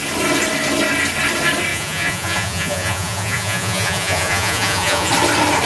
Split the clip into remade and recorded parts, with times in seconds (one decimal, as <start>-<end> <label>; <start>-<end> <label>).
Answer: 0.0-1.7 recorded; 1.7-5.1 remade; 5.1-5.7 recorded